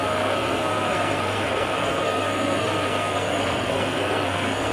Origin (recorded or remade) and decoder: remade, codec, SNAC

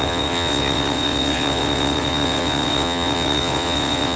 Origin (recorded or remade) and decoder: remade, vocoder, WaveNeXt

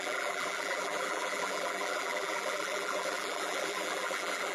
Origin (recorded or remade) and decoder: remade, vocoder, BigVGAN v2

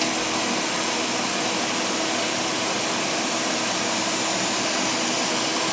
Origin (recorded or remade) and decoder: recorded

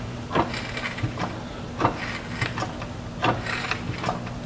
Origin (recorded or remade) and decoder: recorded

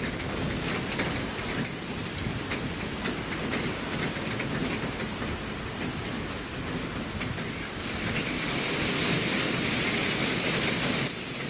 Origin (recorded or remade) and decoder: recorded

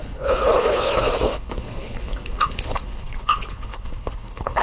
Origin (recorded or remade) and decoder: remade, codec, HILCodec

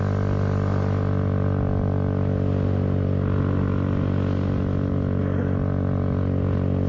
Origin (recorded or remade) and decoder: recorded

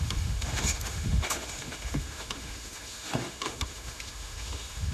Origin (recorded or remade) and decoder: remade, autoencoder, DAC-VAE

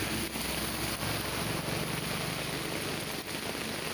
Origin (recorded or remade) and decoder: recorded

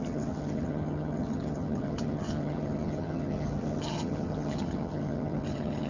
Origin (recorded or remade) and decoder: remade, vocoder, HiFi-GAN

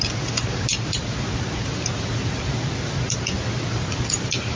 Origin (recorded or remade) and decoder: recorded